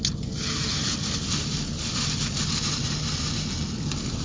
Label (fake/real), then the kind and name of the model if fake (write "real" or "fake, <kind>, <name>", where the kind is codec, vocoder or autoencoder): real